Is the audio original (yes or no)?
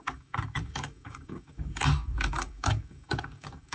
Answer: no